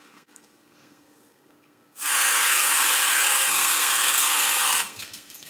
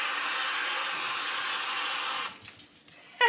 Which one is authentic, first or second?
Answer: second